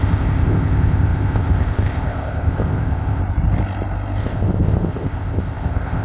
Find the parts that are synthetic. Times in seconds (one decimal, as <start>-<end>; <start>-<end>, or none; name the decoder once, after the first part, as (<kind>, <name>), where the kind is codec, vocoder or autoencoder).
0.0-3.2 (codec, ZipCodec); 4.2-6.0